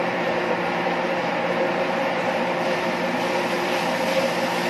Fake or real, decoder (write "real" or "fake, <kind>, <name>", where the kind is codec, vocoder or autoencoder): fake, vocoder, BigVGAN v2